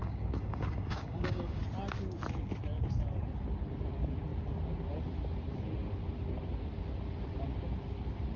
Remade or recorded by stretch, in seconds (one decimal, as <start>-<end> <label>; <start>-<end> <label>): 0.0-1.6 remade; 1.6-8.4 recorded